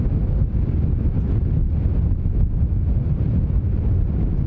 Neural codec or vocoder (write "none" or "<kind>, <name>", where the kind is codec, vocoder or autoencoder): none